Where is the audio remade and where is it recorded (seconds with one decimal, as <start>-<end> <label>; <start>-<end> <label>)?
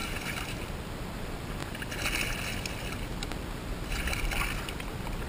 0.0-0.6 remade; 0.6-5.3 recorded